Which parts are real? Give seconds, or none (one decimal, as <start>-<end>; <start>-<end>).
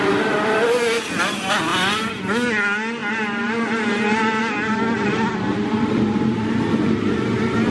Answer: 0.0-7.7